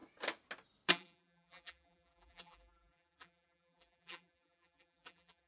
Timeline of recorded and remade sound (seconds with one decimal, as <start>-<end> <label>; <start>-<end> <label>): 0.0-0.9 recorded; 0.9-5.5 remade